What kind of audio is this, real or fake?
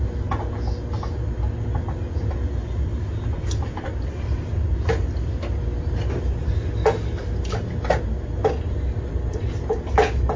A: real